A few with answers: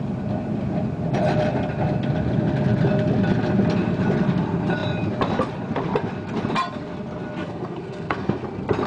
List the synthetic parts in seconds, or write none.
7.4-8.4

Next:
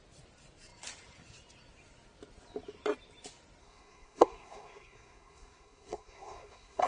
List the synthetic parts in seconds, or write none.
3.6-6.9

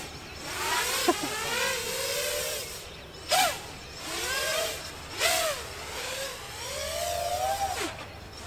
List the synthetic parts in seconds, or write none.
none

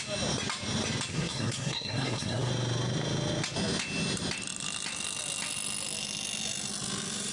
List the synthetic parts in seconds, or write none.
1.1-2.5

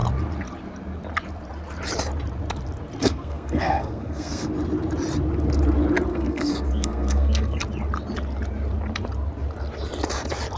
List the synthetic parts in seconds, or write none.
3.0-4.5; 6.1-7.6

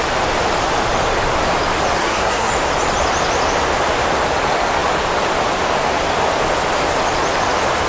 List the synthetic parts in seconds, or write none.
2.0-2.5

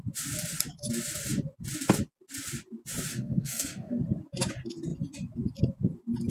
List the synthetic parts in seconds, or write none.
3.1-4.0

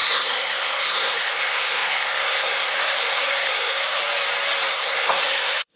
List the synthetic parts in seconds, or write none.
0.0-4.0; 4.7-5.8